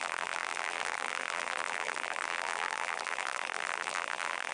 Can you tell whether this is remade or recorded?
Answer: remade